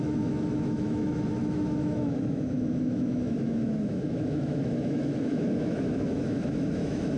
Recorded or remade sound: remade